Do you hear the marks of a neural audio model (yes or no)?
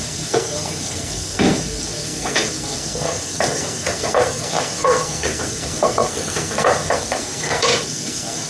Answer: yes